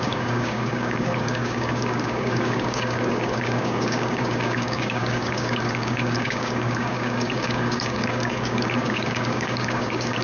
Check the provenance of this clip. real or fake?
fake